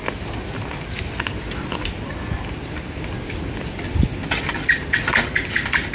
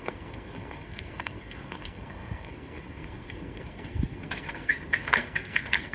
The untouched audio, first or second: first